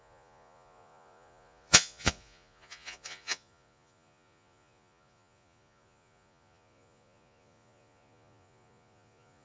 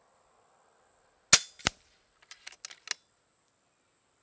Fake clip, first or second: first